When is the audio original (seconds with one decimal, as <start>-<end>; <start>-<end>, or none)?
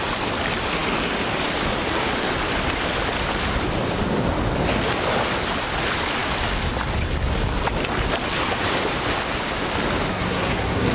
0.0-10.1